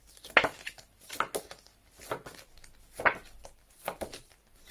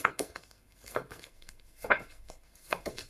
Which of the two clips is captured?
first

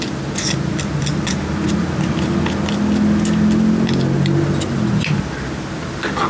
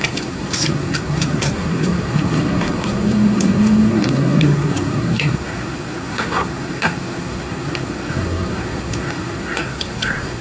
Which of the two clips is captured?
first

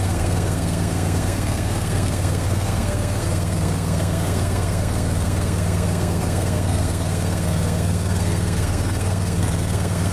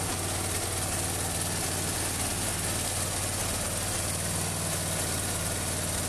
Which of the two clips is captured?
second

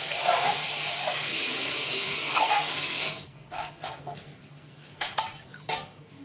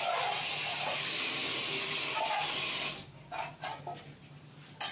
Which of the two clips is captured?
second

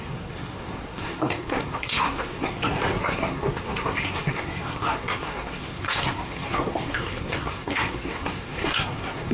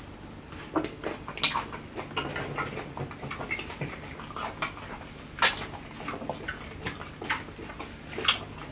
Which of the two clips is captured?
second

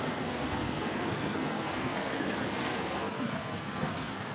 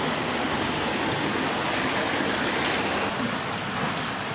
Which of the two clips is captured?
second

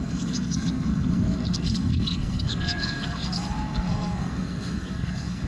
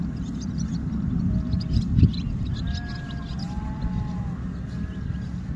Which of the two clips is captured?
second